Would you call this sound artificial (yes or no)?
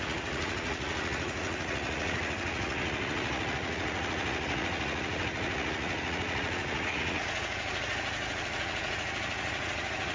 yes